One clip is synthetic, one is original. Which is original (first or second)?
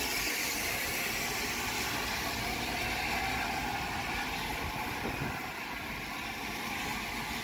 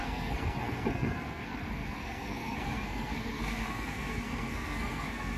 first